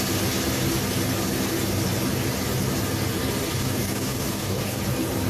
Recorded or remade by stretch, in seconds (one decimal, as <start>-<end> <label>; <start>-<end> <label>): 0.0-3.5 recorded; 3.5-4.8 remade; 4.8-5.3 recorded